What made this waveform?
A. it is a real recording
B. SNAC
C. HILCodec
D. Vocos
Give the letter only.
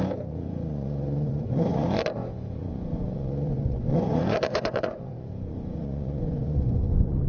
D